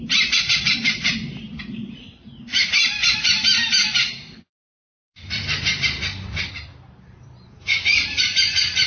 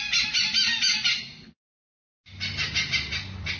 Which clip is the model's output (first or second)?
first